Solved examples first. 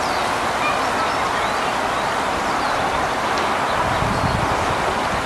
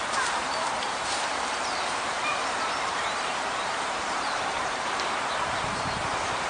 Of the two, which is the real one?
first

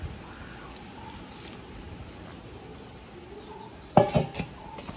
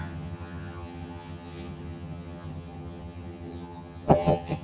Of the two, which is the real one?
first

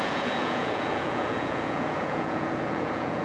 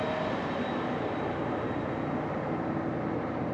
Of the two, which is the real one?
second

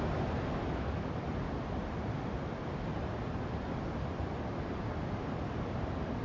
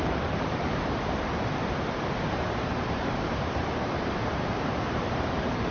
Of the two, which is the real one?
first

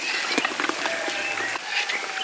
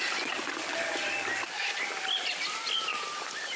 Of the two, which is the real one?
first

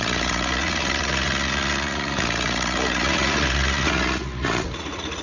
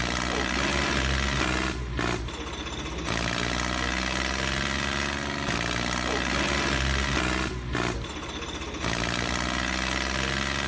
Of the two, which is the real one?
second